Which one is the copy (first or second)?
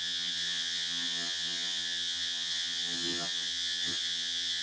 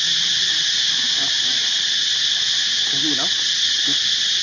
first